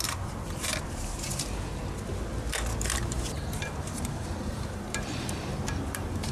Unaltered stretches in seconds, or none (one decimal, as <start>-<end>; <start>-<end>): 0.7-2.8; 3.6-4.5